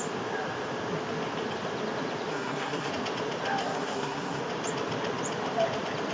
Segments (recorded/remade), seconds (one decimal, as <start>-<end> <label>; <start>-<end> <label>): 0.0-2.3 recorded; 2.3-2.9 remade; 2.9-3.6 recorded; 3.6-4.4 remade; 4.4-6.1 recorded